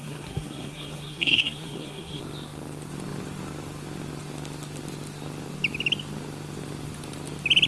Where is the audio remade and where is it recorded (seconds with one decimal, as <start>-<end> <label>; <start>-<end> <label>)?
0.0-2.2 remade; 2.2-7.7 recorded